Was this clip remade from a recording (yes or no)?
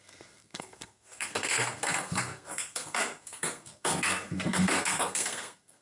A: yes